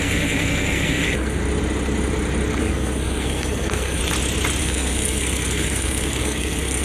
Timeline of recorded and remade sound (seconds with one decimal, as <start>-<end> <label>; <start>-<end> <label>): 0.0-1.4 remade; 1.4-2.6 recorded; 2.6-4.0 remade; 4.0-4.6 recorded; 4.6-6.8 remade